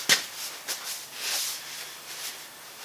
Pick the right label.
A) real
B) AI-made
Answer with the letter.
A